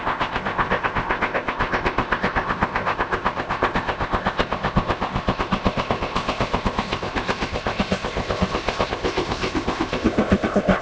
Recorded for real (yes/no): no